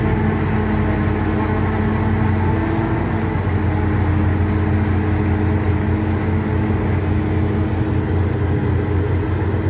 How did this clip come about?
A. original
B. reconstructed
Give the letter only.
A